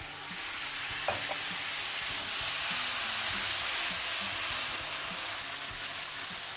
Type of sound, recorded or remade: recorded